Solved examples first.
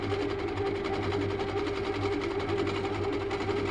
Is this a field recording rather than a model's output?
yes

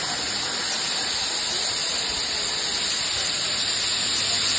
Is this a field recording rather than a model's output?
yes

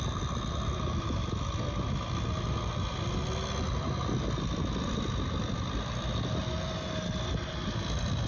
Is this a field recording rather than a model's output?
yes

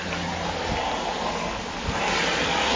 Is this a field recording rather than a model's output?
yes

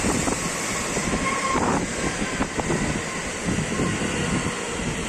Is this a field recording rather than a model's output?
yes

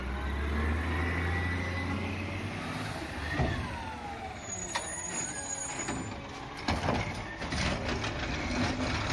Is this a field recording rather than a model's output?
yes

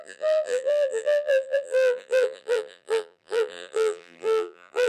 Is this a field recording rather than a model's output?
no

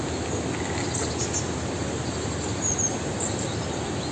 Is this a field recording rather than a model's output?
yes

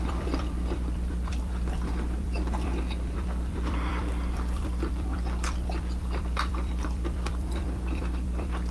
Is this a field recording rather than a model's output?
no